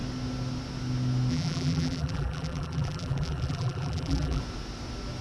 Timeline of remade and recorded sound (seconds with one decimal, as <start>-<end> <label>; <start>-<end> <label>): 0.0-1.3 recorded; 1.3-4.4 remade; 4.4-5.2 recorded